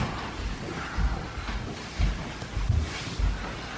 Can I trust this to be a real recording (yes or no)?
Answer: yes